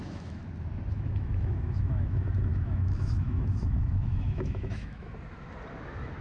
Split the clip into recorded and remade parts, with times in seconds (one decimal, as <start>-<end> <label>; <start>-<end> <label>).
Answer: 0.0-0.4 remade; 0.4-0.9 recorded; 0.9-5.1 remade; 5.1-6.2 recorded